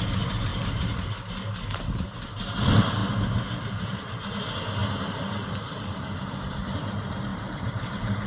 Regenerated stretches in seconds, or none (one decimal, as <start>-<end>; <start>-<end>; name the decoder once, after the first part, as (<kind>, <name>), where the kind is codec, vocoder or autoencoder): 7.3-8.3 (vocoder, BigVGAN v2)